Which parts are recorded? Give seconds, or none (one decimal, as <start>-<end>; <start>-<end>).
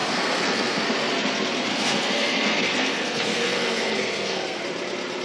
0.8-1.7; 4.6-5.2